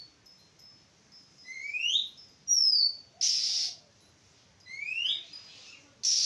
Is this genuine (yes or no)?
yes